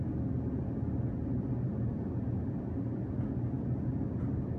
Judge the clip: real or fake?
real